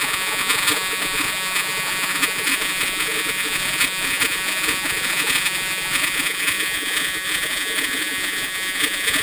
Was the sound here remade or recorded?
remade